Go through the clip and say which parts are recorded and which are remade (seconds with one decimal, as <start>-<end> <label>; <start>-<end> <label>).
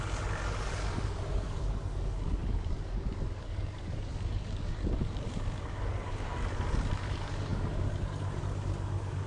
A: 0.0-9.3 remade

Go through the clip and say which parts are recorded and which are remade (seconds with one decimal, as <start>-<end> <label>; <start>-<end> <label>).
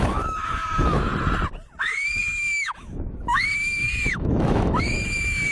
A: 0.0-1.1 remade; 1.1-1.8 recorded; 1.8-5.5 remade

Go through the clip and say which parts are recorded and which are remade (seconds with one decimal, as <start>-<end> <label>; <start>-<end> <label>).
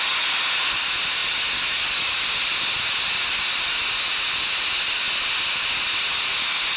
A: 0.0-6.8 recorded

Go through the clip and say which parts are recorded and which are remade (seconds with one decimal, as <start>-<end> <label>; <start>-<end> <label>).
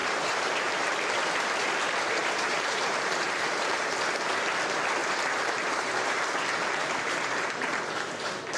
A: 0.0-0.7 remade; 0.7-2.2 recorded; 2.2-3.9 remade; 3.9-5.0 recorded; 5.0-7.8 remade; 7.8-8.6 recorded